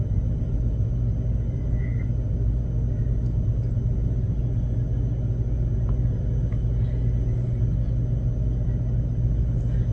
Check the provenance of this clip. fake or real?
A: real